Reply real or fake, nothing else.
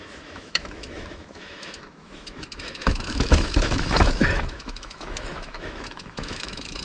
fake